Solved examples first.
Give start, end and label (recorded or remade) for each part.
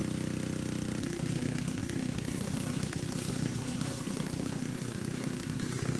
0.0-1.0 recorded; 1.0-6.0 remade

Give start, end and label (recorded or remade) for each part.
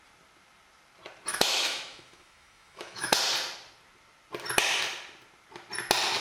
0.0-1.3 recorded; 1.3-3.2 remade; 3.2-6.2 recorded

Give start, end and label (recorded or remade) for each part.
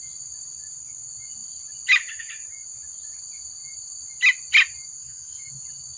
0.0-5.0 recorded; 5.0-5.5 remade; 5.5-6.0 recorded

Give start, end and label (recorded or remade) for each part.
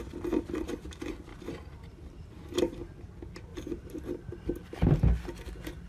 0.0-1.3 recorded; 1.3-2.6 remade; 2.6-3.5 recorded; 3.5-4.1 remade; 4.1-5.9 recorded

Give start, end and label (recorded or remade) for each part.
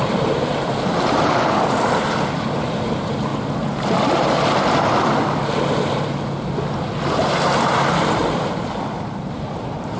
0.0-3.3 remade; 3.3-7.3 recorded; 7.3-8.2 remade; 8.2-9.0 recorded; 9.0-10.0 remade